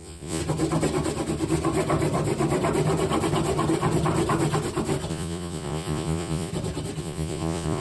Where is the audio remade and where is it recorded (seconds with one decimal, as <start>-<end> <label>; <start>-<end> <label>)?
0.0-0.4 remade; 0.4-5.1 recorded; 5.1-6.5 remade; 6.5-7.0 recorded; 7.0-7.8 remade